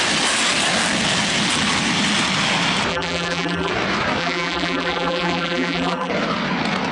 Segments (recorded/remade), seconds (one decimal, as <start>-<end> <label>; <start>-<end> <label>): 0.0-2.9 recorded; 2.9-3.7 remade; 3.7-4.2 recorded; 4.2-6.1 remade; 6.1-6.9 recorded